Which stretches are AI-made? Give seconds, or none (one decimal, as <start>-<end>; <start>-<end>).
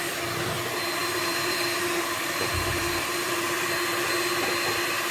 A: 1.0-4.1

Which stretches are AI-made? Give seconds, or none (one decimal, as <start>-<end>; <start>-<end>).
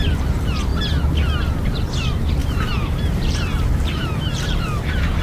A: 0.0-0.7; 2.0-5.2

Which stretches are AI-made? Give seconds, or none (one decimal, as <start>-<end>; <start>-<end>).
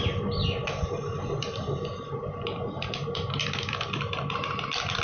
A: 0.4-3.4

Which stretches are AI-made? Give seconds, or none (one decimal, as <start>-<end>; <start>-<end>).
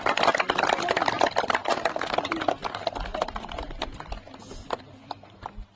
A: none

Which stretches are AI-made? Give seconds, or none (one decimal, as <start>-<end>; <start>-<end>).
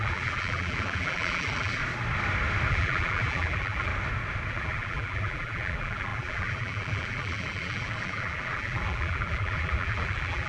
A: 0.0-1.8; 2.7-3.9; 4.5-10.5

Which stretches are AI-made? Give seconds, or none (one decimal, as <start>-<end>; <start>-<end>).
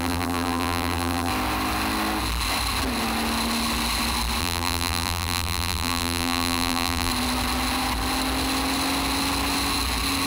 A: 0.0-1.3; 4.4-7.1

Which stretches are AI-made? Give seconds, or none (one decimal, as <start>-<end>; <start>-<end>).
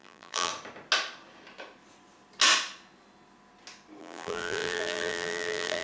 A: 0.0-0.5; 4.0-5.8